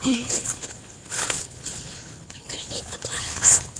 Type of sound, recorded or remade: remade